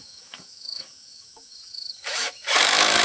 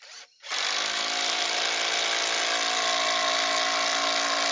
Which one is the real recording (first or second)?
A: second